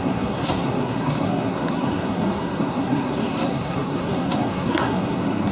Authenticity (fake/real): fake